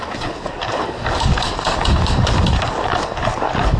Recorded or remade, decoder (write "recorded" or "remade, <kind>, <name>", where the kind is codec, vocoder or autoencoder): remade, codec, DAC